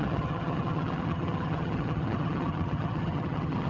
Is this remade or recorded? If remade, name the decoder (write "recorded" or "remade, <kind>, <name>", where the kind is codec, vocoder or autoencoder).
remade, vocoder, HiFi-GAN